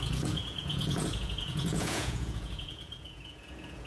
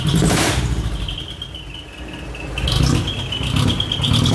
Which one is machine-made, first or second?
first